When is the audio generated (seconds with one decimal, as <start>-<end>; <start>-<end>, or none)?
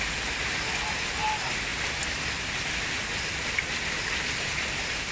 none